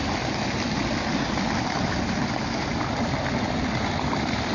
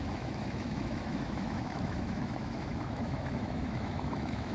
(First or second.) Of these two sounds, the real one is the first